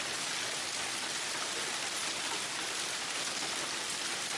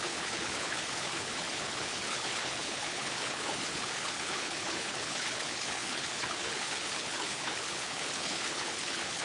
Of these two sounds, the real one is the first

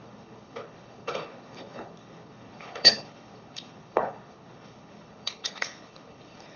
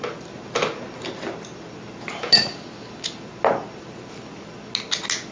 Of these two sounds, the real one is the second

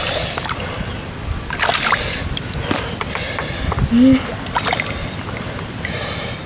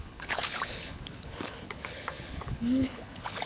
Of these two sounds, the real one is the first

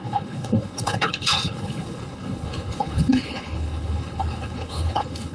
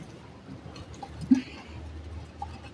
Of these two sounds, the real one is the second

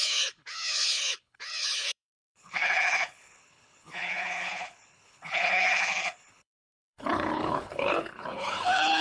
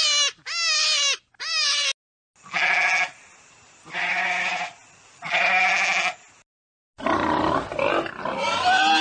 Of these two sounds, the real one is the second